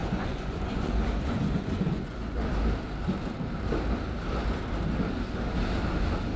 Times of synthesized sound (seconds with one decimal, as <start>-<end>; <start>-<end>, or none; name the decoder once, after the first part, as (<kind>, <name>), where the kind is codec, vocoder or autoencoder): 0.0-2.5 (vocoder, Vocos)

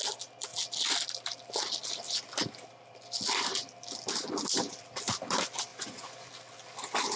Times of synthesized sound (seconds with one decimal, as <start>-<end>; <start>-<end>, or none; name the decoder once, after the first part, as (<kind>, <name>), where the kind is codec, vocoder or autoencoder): 5.7-6.3 (vocoder, Vocos)

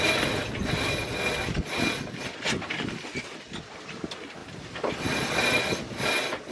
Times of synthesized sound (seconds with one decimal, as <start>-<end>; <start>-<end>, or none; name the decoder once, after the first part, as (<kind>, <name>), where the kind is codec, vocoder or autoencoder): none

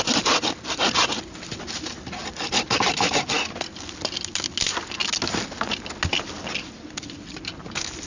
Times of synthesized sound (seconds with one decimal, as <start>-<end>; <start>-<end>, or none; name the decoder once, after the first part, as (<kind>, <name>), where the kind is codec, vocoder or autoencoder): none